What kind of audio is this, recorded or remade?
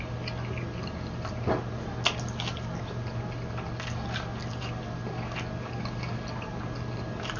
recorded